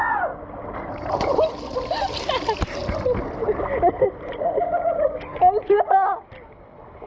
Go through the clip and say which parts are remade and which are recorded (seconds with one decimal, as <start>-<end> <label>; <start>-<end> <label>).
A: 0.0-7.1 recorded